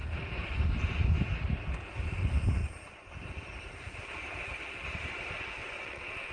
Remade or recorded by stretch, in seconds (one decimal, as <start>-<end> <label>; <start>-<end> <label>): 0.0-5.6 recorded; 5.6-6.3 remade